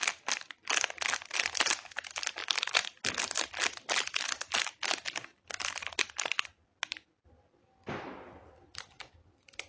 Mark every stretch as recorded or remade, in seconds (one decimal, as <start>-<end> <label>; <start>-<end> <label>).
0.0-9.7 recorded